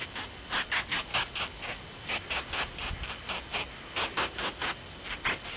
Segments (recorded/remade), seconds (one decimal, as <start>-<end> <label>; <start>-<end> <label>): 0.0-5.6 recorded